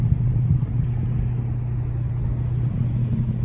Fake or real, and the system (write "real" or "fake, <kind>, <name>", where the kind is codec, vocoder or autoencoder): real